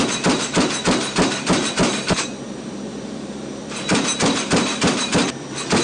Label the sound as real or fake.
fake